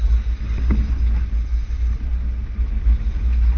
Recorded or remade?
recorded